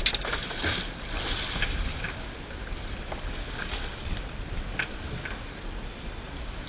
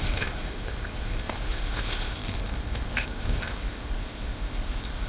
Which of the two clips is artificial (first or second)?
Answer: second